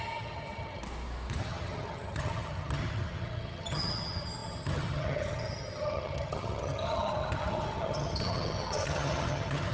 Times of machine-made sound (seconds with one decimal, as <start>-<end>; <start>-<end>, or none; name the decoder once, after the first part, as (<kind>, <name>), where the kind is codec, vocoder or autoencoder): 0.0-0.8 (vocoder, HiFi-GAN); 1.4-9.7